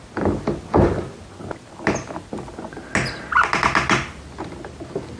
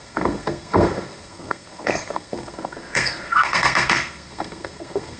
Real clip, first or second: first